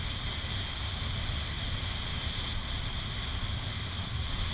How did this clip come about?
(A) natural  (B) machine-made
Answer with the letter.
A